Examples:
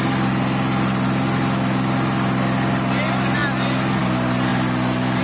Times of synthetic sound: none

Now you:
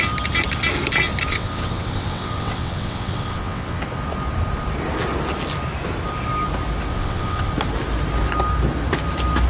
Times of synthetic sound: 1.3-3.8; 6.9-7.5